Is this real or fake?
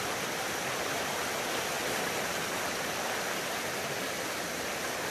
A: real